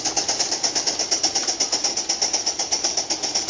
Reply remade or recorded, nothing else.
recorded